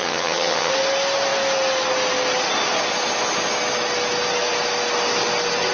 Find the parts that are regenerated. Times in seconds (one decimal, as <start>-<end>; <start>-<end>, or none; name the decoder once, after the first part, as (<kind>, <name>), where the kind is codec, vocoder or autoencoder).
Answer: 0.0-0.7 (vocoder, HiFi-GAN)